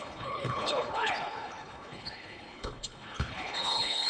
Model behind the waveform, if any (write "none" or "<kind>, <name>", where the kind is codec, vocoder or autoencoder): codec, HILCodec